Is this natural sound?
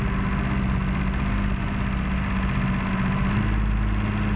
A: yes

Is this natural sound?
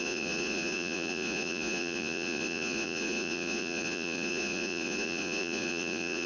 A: no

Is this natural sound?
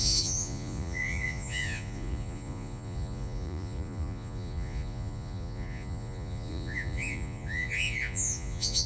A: no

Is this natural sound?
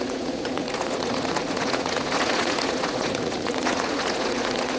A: no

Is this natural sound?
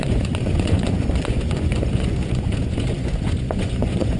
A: no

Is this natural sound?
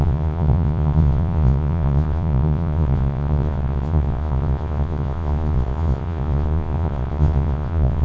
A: no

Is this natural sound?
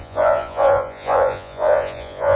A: no